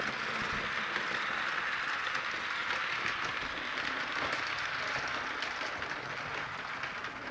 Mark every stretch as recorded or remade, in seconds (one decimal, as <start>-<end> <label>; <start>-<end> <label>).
0.0-7.3 recorded